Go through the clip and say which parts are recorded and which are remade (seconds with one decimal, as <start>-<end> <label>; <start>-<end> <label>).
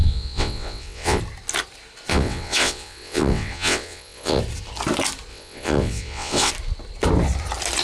0.0-1.2 remade; 1.2-2.1 recorded; 2.1-4.4 remade; 4.4-5.3 recorded; 5.3-6.5 remade; 6.5-7.8 recorded